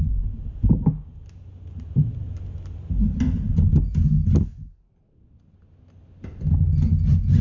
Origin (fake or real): real